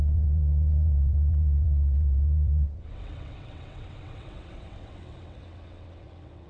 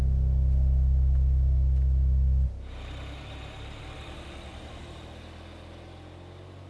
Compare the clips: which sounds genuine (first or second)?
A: second